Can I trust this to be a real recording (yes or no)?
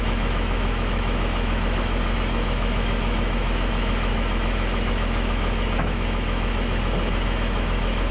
no